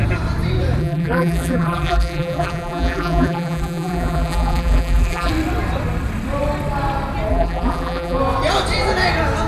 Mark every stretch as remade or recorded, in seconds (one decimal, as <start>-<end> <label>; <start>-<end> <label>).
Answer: 0.0-0.8 recorded; 0.8-5.3 remade; 5.3-7.3 recorded; 7.3-8.2 remade; 8.2-9.5 recorded